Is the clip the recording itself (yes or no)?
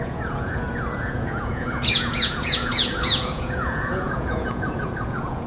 no